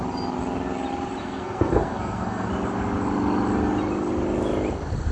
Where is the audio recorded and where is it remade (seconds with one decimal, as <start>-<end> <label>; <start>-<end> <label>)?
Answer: 0.0-1.2 recorded; 1.2-2.5 remade; 2.5-5.1 recorded